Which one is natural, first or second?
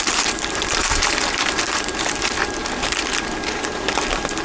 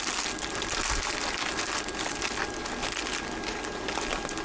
second